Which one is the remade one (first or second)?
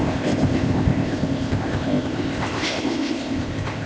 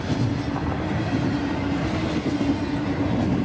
first